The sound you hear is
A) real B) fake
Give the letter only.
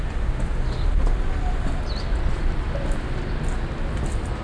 A